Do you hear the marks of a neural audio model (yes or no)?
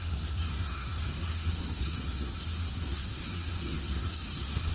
yes